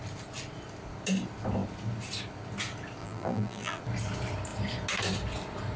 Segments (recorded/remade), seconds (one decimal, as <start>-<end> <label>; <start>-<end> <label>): 0.0-3.0 recorded; 3.0-3.8 remade; 3.8-5.8 recorded